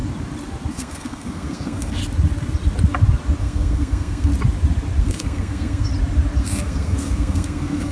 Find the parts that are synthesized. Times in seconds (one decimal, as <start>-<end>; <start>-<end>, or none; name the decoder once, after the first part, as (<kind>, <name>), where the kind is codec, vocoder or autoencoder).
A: 0.7-2.0 (codec, SNAC); 3.4-4.3; 5.0-5.9; 6.4-7.9